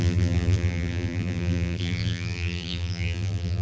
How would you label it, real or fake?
fake